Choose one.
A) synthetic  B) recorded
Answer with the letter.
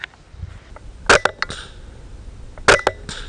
B